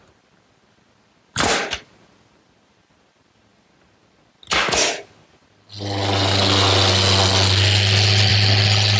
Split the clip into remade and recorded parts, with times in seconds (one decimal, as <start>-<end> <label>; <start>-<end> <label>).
0.0-9.0 recorded